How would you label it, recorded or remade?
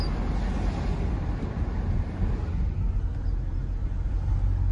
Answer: recorded